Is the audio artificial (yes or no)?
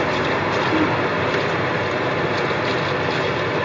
no